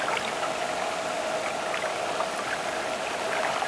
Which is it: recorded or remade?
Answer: recorded